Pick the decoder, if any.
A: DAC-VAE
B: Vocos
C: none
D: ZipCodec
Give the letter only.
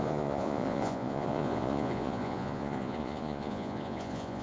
B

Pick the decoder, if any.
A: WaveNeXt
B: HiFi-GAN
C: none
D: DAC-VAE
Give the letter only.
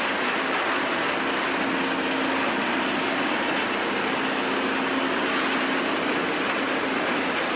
C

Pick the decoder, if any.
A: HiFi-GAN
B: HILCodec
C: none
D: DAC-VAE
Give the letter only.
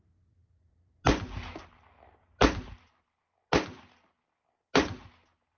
C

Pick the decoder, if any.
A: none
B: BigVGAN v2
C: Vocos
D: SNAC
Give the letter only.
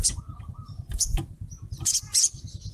B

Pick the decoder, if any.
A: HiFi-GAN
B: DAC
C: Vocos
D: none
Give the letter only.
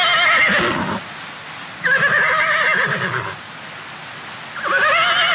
D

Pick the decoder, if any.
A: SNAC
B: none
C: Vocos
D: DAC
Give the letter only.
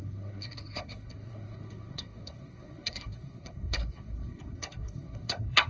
A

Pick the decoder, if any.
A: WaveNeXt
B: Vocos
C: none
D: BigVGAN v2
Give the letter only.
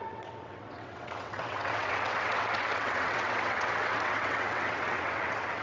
A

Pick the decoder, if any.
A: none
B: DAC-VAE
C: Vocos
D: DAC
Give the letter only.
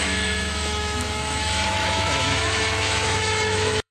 B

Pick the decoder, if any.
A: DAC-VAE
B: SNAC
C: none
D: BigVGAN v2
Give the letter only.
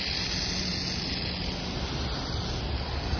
C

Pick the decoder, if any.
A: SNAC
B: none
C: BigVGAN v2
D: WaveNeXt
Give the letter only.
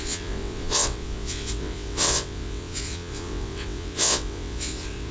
D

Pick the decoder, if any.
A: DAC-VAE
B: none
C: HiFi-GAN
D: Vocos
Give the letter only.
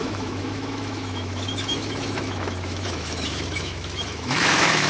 A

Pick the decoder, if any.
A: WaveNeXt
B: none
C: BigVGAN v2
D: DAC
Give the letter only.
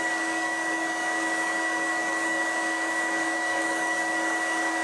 D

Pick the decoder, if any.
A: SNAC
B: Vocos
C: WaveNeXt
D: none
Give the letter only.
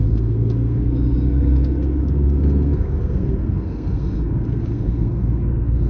A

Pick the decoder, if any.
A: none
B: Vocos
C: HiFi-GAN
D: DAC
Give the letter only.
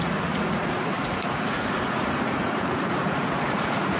B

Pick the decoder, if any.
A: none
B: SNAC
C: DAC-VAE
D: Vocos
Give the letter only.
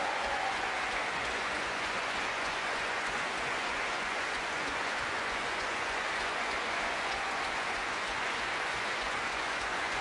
D